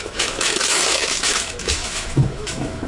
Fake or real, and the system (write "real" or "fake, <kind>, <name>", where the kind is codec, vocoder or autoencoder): fake, autoencoder, DAC-VAE